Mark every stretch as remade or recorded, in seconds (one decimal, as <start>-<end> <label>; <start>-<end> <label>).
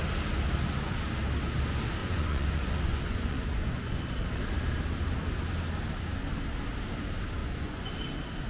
0.0-2.0 recorded; 2.0-4.0 remade; 4.0-7.4 recorded; 7.4-7.9 remade; 7.9-8.5 recorded